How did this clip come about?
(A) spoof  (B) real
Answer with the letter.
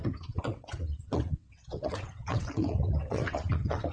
A